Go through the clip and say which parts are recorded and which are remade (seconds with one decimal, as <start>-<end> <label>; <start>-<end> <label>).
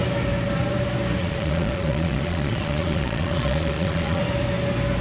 0.0-1.2 recorded; 1.2-4.2 remade; 4.2-5.0 recorded